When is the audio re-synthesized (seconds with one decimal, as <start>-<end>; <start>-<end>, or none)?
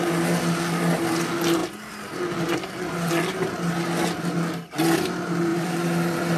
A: 5.5-6.4